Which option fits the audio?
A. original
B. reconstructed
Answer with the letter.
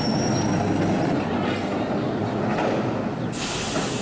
A